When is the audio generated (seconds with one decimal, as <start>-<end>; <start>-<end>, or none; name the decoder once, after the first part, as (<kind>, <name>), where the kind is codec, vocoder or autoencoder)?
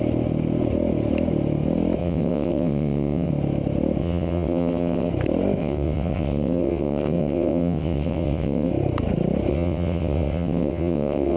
2.0-3.3 (vocoder, WaveNeXt); 4.0-5.1; 5.6-8.7; 9.5-11.4